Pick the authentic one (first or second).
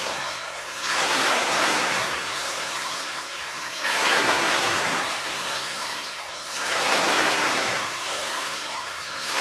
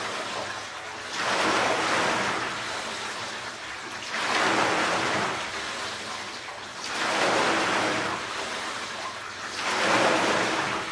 second